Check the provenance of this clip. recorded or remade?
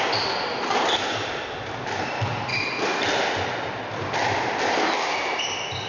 recorded